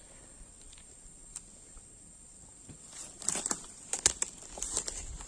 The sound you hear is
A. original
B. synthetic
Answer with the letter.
A